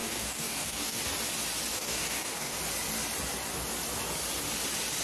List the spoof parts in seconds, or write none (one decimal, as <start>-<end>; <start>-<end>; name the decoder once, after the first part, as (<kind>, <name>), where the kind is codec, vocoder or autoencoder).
0.0-1.0 (codec, DAC); 1.7-2.6